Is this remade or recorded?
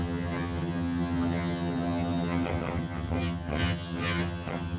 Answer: remade